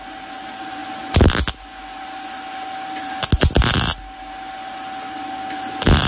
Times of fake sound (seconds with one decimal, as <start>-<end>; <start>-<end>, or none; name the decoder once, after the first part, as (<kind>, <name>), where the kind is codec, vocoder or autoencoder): none